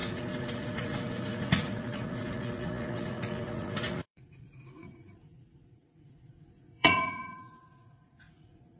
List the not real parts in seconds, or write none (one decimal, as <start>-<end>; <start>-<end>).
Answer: 0.0-8.8